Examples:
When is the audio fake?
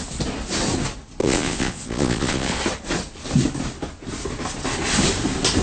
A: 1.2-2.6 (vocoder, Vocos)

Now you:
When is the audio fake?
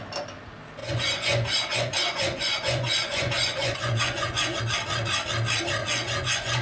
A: 0.8-4.6 (vocoder, Vocos); 5.8-6.6